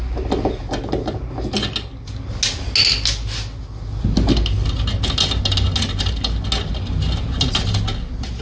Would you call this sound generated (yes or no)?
no